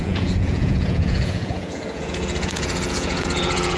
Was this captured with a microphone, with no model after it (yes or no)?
no